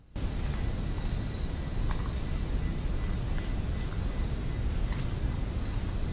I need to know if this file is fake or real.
real